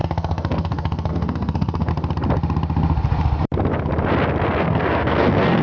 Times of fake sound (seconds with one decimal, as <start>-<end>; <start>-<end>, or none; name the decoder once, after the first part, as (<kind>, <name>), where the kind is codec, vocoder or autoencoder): 0.0-1.9 (codec, SNAC); 4.6-5.6